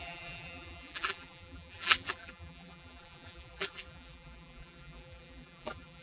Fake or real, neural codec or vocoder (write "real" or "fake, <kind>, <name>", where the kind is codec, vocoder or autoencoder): fake, vocoder, BigVGAN v2